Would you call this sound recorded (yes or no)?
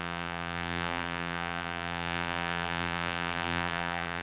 no